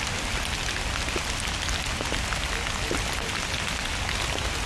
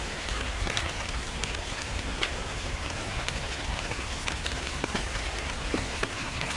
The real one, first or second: first